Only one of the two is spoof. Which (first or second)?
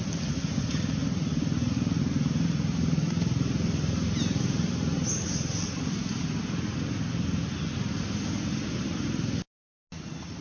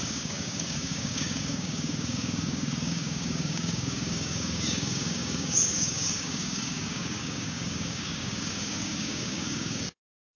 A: second